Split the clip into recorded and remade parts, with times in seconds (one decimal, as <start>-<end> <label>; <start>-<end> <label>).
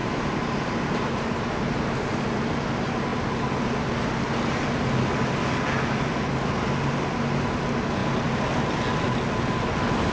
0.0-1.7 remade; 1.7-10.1 recorded